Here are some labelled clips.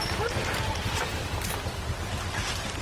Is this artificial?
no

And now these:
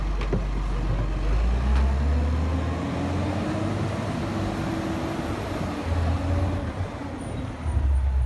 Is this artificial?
no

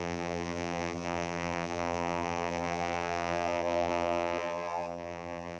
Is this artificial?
yes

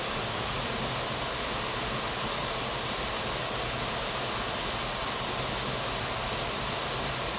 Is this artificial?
no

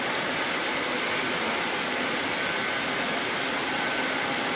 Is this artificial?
no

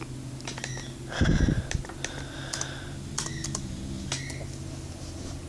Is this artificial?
no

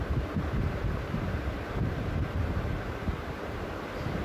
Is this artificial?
yes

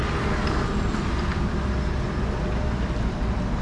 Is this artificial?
no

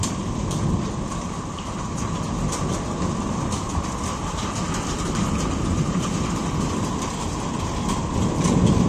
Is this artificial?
yes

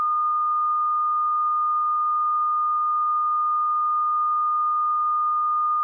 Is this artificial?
no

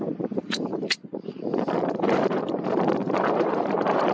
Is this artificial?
yes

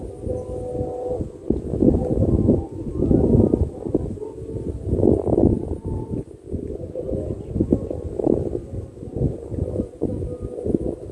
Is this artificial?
no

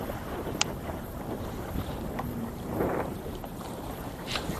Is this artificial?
yes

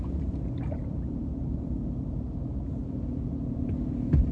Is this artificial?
yes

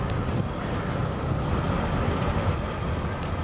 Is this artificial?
yes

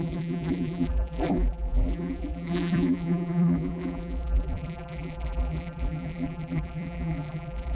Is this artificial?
yes